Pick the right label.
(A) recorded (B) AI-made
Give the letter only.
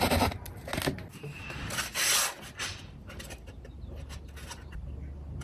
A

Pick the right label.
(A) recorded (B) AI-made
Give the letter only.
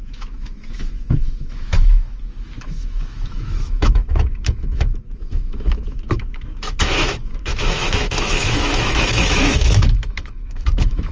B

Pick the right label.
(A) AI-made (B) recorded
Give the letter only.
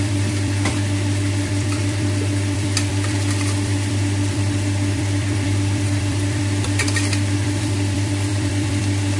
A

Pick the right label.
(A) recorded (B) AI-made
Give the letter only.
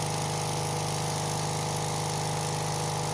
A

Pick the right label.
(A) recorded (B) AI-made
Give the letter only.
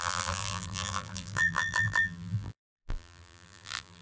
B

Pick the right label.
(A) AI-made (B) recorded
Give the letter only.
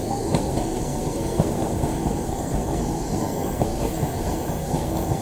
A